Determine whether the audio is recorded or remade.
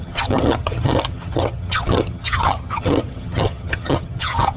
remade